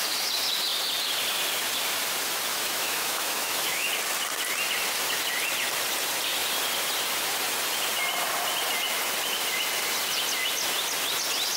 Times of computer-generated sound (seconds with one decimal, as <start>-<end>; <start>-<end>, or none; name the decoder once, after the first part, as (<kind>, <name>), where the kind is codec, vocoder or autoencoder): 2.5-3.9 (autoencoder, DAC-VAE)